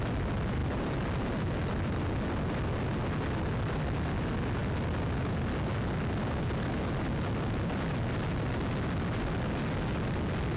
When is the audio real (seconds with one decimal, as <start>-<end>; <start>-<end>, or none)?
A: 0.0-10.6